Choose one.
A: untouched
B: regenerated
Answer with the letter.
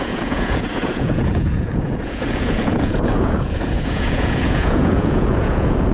B